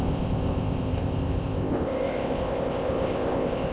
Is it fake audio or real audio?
fake